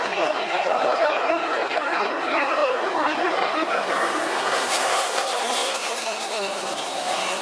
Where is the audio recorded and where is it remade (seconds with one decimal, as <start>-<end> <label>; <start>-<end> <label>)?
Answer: 0.0-7.4 remade